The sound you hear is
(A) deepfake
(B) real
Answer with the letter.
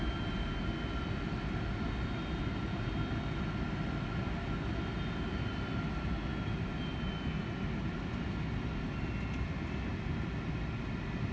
B